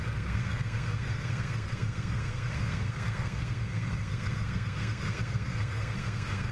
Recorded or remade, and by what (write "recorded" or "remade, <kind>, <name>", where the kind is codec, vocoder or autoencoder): remade, codec, SNAC